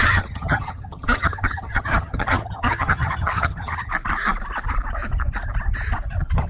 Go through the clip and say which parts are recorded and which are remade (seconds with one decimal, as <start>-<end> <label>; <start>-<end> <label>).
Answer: 0.0-3.9 remade; 3.9-6.5 recorded